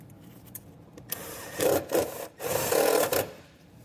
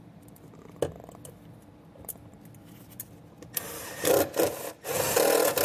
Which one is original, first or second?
second